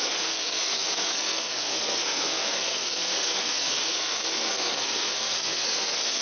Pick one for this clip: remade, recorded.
remade